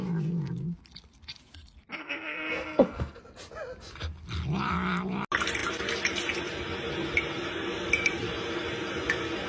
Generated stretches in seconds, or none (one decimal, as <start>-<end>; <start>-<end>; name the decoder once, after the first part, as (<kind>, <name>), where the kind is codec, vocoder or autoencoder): 2.0-3.2 (codec, SNAC)